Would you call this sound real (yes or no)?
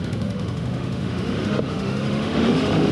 no